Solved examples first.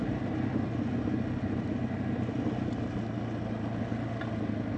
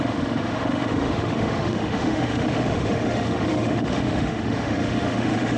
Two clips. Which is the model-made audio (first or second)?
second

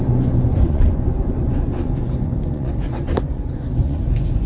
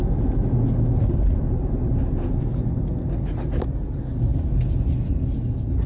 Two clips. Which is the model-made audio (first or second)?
first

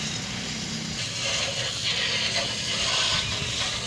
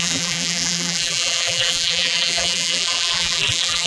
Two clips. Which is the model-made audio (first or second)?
second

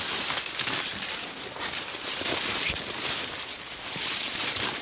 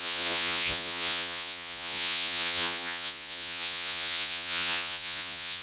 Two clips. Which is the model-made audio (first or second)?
second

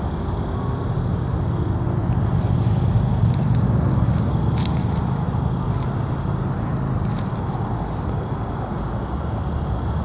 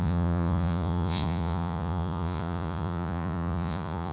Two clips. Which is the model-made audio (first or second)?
second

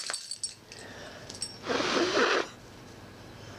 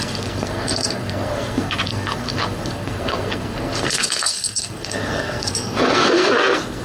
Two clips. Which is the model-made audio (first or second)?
second